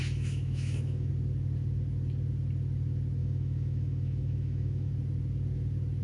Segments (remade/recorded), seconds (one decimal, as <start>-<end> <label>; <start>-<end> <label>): 0.0-1.1 remade; 1.1-3.2 recorded; 3.2-4.9 remade; 4.9-6.0 recorded